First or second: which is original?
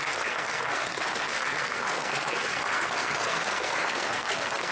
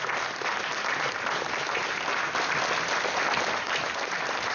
second